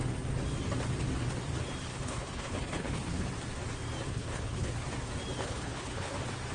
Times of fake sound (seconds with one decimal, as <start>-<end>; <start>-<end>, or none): 1.9-3.2; 4.1-4.7; 5.4-6.1